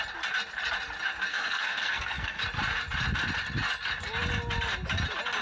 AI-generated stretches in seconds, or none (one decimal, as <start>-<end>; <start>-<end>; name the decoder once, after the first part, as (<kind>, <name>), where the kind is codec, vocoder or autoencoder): 1.3-2.4 (codec, SNAC)